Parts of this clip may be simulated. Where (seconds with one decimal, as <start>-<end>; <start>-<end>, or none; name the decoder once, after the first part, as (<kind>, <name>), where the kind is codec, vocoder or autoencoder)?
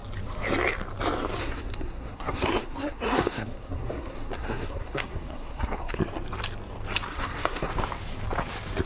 1.4-6.0 (codec, SNAC); 7.1-7.7